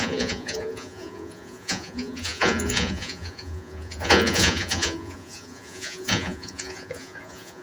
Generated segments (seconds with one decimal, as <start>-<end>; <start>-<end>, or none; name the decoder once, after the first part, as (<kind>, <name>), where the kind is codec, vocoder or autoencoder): 0.0-7.6 (vocoder, Vocos)